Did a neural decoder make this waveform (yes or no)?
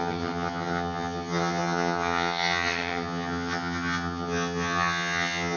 yes